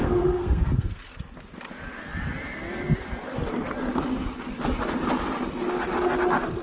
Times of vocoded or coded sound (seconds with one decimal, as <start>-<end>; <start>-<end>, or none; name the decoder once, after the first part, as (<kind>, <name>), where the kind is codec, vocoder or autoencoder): 0.0-1.0 (codec, SNAC)